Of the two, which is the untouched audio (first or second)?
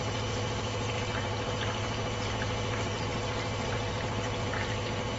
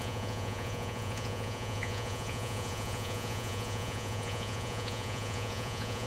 first